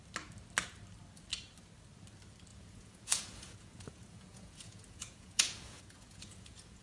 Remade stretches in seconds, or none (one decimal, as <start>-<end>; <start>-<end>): 2.5-6.8